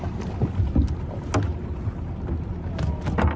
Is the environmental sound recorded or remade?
recorded